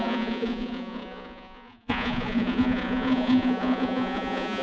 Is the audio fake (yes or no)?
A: yes